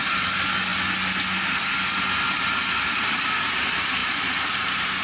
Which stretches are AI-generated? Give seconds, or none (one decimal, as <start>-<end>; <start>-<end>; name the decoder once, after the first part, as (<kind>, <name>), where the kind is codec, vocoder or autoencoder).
none